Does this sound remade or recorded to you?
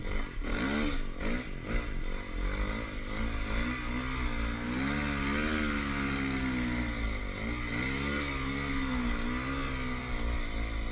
recorded